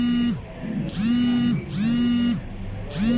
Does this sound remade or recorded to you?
recorded